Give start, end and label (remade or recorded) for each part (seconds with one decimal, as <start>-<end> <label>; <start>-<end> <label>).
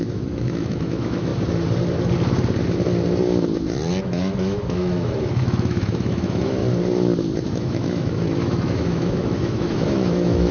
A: 0.0-1.3 remade; 1.3-4.0 recorded; 4.0-6.6 remade; 6.6-7.5 recorded; 7.5-10.5 remade